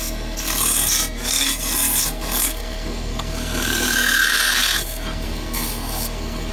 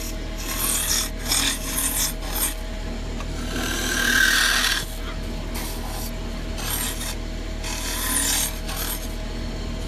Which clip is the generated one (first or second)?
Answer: first